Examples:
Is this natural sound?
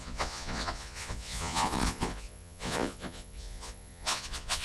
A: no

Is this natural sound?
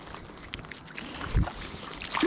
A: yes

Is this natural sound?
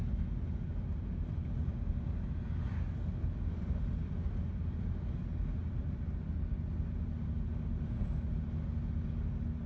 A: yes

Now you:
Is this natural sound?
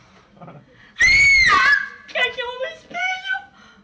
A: yes